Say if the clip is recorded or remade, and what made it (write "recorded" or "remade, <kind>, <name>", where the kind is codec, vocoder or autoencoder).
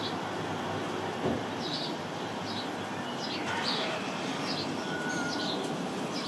recorded